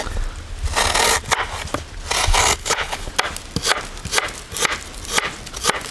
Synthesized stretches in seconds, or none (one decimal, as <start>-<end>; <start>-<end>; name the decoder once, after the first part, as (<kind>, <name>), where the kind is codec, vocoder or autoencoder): 2.6-3.1 (codec, HILCodec)